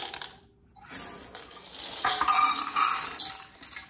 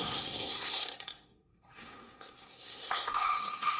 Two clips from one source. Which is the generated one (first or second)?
second